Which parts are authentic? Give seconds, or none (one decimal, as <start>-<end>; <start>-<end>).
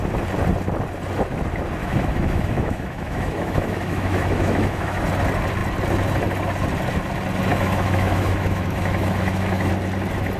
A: 0.0-1.8; 5.0-7.5; 9.7-10.4